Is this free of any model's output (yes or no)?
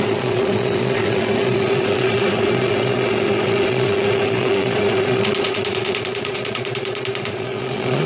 no